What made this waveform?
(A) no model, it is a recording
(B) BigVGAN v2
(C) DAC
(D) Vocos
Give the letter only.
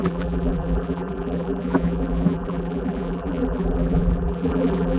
B